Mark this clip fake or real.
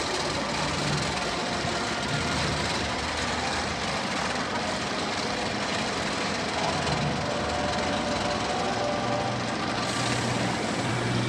real